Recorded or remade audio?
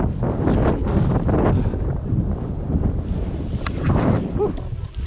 recorded